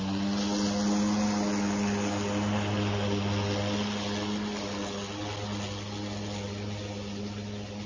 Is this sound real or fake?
real